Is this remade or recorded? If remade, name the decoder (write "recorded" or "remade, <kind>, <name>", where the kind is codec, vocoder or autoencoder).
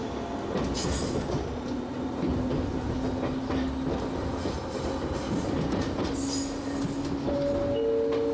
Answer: recorded